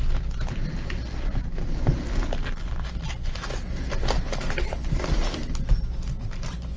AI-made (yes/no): no